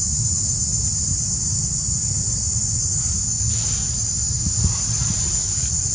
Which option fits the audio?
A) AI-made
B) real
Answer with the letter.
B